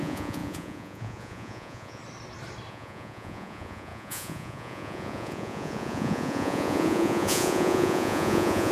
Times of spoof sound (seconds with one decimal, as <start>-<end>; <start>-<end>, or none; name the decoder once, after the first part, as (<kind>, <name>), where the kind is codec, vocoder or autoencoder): 0.0-2.0 (vocoder, Vocos); 2.7-8.7